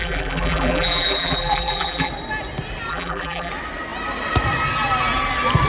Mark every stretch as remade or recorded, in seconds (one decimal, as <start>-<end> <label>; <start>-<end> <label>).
0.0-2.1 remade; 2.1-2.9 recorded; 2.9-3.5 remade; 3.5-5.7 recorded